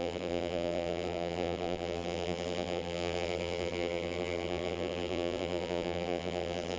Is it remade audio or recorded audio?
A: remade